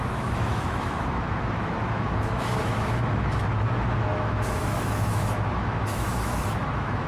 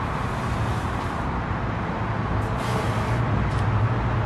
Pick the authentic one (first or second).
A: second